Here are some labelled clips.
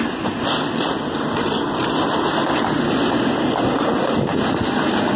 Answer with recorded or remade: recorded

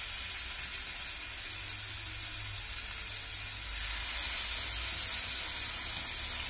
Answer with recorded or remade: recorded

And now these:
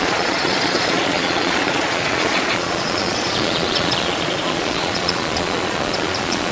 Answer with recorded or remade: remade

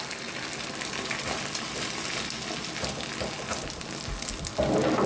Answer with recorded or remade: recorded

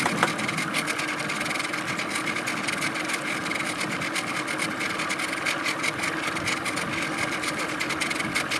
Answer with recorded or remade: recorded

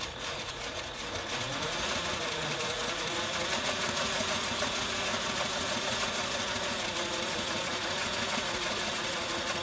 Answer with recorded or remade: remade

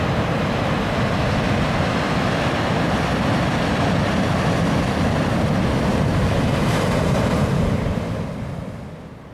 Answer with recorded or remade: recorded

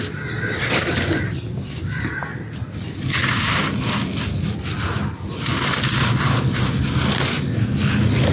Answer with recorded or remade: recorded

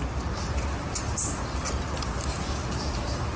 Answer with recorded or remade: recorded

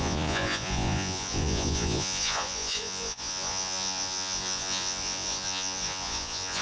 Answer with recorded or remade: remade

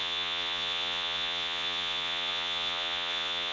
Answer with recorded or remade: remade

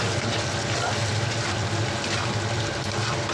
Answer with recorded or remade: recorded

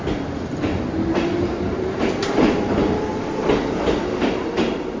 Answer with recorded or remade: recorded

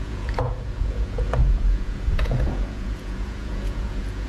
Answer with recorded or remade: remade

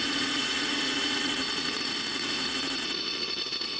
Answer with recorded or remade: remade